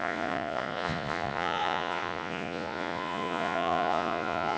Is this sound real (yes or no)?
no